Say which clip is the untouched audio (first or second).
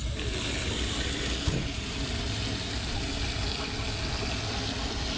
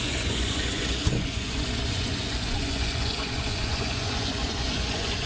first